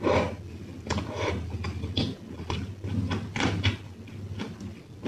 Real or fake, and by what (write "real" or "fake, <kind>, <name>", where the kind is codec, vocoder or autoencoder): real